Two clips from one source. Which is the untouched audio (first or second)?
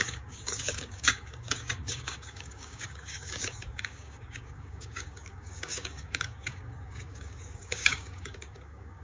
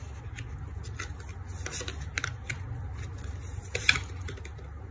second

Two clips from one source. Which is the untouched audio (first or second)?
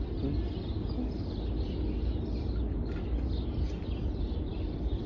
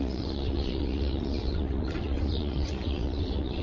first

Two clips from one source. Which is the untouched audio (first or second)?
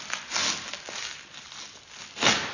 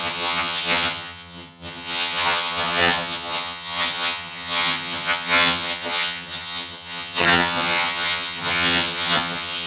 first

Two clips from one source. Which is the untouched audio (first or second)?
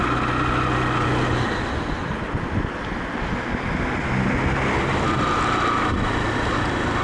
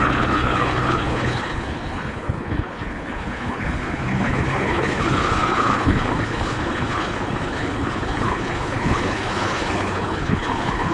first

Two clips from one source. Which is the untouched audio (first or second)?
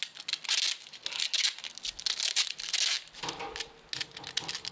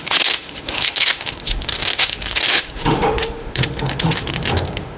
first